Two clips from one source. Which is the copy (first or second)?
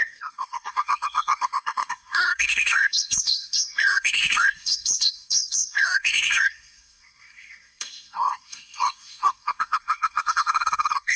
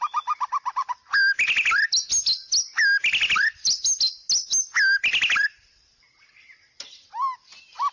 first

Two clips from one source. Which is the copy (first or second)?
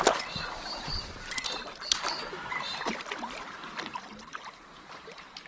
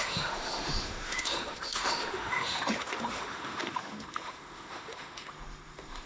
second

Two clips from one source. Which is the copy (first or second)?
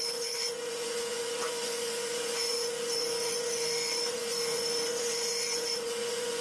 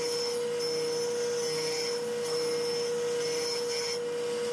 first